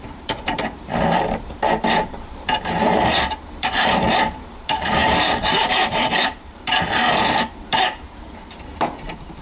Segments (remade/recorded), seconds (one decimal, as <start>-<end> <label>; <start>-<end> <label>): 0.0-9.4 remade